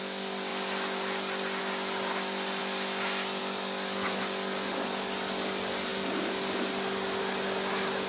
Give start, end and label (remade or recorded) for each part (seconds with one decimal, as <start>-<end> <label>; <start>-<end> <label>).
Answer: 0.0-8.1 recorded